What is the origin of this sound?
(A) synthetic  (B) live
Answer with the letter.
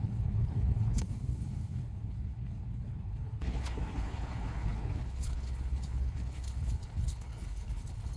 A